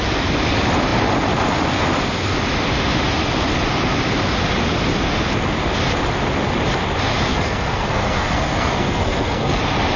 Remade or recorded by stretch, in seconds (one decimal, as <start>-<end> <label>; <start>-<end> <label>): 0.0-7.3 recorded; 7.3-9.6 remade; 9.6-10.0 recorded